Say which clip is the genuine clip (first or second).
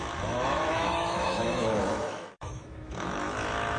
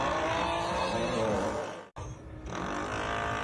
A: second